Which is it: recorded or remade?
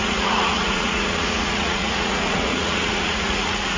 remade